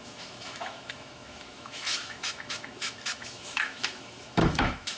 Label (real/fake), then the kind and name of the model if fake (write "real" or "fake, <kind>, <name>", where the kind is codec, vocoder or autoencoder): fake, autoencoder, DAC-VAE